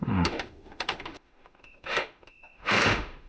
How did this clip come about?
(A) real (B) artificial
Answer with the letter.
B